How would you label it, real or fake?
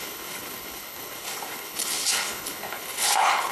fake